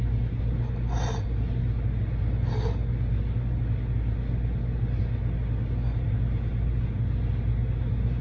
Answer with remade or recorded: recorded